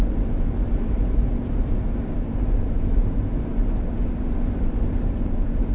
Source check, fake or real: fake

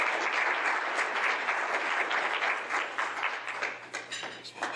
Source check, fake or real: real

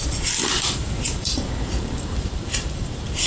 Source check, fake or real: fake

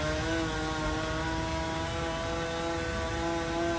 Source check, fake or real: real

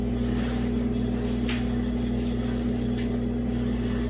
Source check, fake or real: real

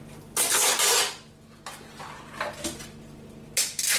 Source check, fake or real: real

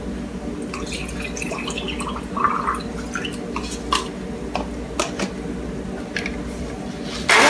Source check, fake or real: real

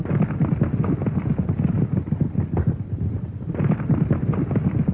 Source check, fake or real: real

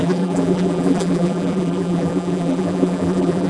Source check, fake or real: fake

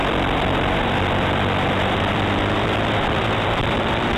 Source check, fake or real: fake